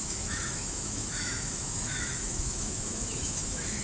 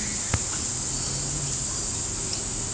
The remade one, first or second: first